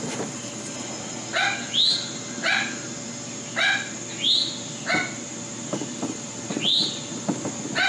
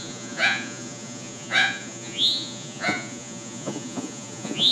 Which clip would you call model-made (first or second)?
second